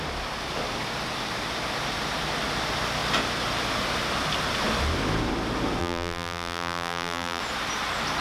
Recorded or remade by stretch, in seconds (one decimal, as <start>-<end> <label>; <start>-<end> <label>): 0.0-5.8 recorded; 5.8-7.4 remade; 7.4-8.2 recorded